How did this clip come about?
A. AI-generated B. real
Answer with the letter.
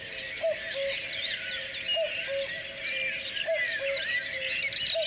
B